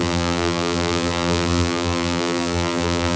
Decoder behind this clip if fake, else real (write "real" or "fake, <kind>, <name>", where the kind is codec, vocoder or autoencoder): fake, vocoder, BigVGAN v2